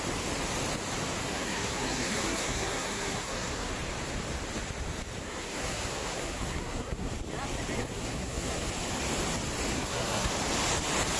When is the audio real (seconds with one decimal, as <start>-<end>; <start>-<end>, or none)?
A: 0.0-1.2; 3.7-5.2; 7.1-7.8; 8.7-9.7; 10.3-11.2